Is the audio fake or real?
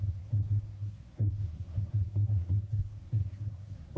fake